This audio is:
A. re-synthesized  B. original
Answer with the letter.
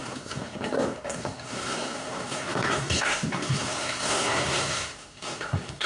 A